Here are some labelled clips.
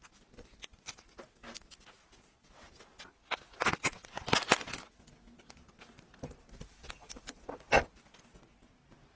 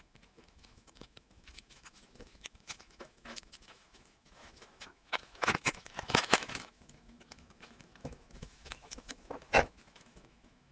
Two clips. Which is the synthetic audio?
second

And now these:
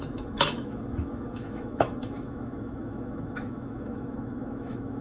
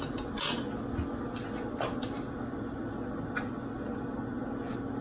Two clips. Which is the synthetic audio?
first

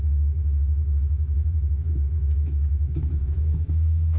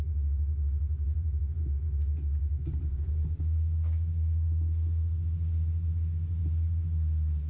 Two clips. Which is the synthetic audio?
first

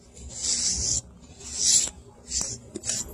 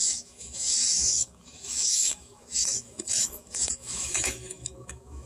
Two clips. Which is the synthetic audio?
second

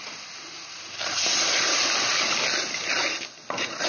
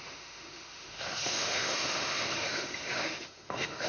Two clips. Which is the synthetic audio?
second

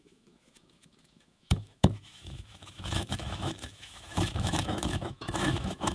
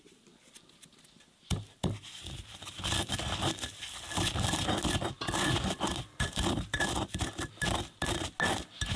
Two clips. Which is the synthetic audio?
first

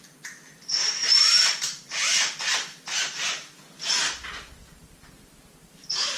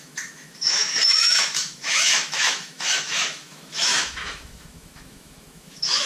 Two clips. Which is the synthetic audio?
second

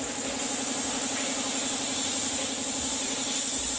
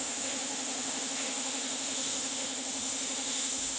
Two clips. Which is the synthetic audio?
second